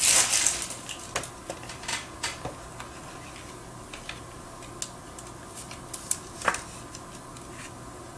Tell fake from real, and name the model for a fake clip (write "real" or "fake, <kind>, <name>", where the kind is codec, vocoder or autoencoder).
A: real